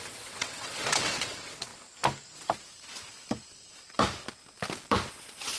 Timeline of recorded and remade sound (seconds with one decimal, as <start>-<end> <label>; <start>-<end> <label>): 0.0-1.7 remade; 1.7-5.1 recorded; 5.1-5.6 remade